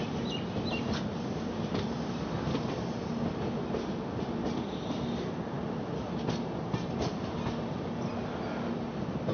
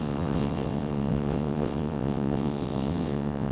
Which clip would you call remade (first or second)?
second